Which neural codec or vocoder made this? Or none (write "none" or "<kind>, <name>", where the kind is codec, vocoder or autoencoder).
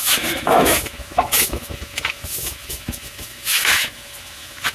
autoencoder, DAC-VAE